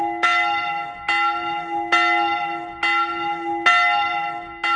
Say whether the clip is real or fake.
real